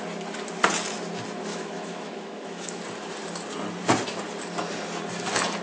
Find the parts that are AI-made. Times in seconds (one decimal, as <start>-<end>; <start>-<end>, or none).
1.5-2.8